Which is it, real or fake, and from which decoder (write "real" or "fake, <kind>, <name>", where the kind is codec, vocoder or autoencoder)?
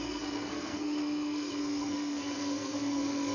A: fake, codec, SNAC